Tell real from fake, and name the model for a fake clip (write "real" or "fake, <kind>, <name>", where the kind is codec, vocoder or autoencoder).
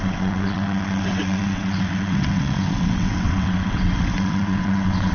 fake, vocoder, WaveNeXt